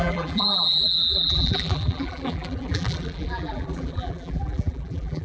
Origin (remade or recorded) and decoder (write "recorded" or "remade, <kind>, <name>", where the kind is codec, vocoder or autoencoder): remade, vocoder, BigVGAN v2